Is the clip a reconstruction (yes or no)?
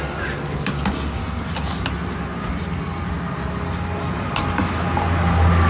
no